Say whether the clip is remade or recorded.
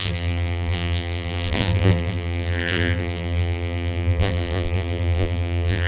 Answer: remade